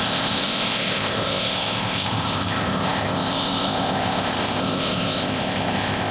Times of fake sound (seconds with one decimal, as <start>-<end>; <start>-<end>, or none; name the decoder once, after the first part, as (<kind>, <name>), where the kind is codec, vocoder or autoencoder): 0.0-6.1 (codec, ZipCodec)

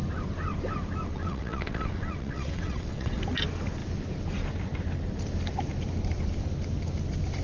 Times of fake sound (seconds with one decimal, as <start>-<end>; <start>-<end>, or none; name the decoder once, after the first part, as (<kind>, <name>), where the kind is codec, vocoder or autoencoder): 1.1-3.2 (vocoder, WaveNeXt)

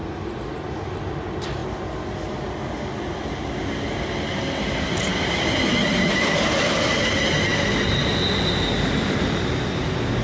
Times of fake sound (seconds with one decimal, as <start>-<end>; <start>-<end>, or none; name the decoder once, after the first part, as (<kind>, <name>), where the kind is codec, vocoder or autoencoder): none

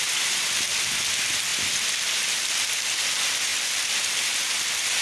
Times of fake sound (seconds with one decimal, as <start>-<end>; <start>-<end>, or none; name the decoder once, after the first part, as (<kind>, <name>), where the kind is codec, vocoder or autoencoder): 3.5-4.6 (vocoder, BigVGAN v2)

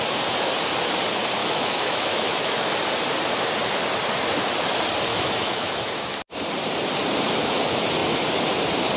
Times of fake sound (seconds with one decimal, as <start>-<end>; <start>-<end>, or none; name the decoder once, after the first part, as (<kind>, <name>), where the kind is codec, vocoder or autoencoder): 1.4-2.8 (autoencoder, DAC-VAE); 5.1-5.9